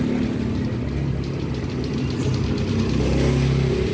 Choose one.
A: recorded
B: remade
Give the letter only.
A